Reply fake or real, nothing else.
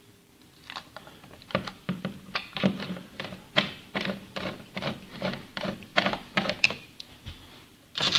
fake